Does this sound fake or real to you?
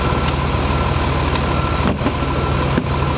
real